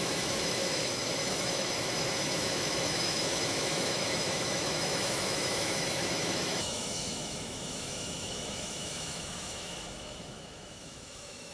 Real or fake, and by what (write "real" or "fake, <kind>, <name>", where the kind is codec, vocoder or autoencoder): fake, autoencoder, DAC-VAE